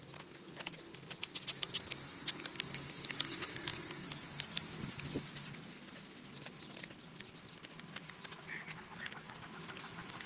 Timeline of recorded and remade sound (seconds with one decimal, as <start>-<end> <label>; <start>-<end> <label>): 0.0-8.9 recorded; 8.9-9.6 remade; 9.6-10.3 recorded